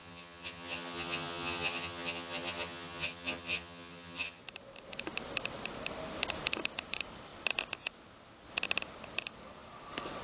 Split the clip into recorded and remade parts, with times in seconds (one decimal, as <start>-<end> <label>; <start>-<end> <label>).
0.0-4.4 remade; 4.4-10.2 recorded